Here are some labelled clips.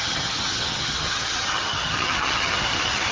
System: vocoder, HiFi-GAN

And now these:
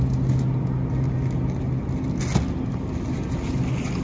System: none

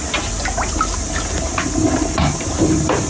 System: none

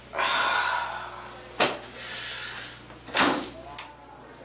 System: none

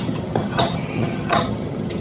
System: vocoder, HiFi-GAN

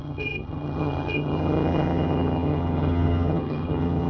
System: vocoder, HiFi-GAN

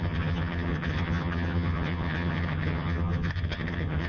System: vocoder, HiFi-GAN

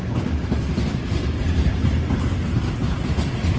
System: none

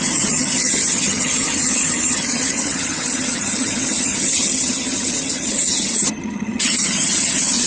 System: vocoder, HiFi-GAN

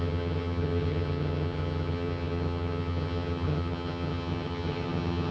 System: vocoder, HiFi-GAN